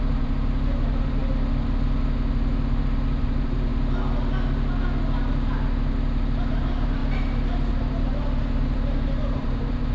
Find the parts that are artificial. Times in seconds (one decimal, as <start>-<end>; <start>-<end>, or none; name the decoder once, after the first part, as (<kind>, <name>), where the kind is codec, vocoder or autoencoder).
0.0-1.2 (vocoder, BigVGAN v2); 3.2-3.7; 6.5-7.0; 7.7-9.9